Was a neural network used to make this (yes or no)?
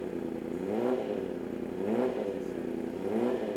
no